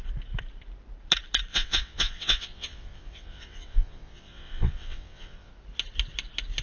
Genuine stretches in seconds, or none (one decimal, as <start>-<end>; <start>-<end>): 0.0-1.5; 5.5-6.6